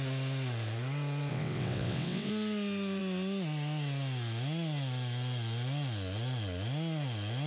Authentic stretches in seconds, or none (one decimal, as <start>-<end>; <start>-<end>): 0.0-1.3; 2.3-7.5